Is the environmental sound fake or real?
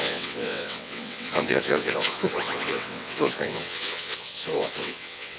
fake